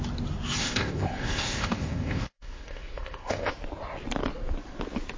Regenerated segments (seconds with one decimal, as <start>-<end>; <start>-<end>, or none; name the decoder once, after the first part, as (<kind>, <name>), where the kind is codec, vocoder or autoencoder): 0.6-3.5 (codec, ZipCodec)